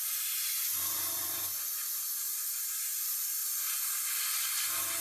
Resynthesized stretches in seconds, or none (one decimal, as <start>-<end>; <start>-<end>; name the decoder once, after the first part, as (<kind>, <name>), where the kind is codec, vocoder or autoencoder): none